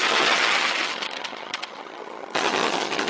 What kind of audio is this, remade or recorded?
remade